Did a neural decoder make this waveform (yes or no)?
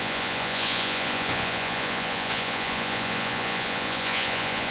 yes